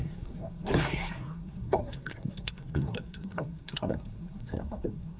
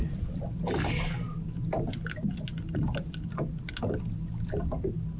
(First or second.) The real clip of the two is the second